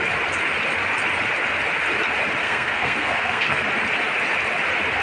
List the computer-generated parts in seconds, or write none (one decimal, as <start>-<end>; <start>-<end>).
2.4-3.6